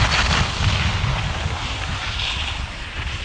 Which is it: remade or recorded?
recorded